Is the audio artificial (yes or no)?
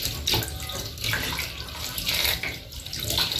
no